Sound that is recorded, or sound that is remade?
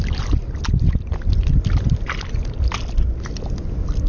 recorded